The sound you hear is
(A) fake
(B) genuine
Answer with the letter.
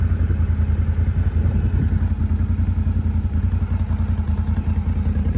B